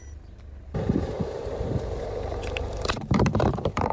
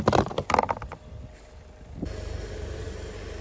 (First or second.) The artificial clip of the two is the first